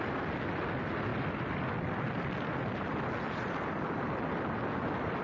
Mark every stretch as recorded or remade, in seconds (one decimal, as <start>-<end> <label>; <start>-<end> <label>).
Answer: 0.0-5.2 recorded